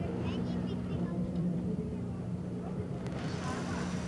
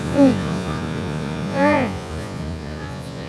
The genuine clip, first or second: first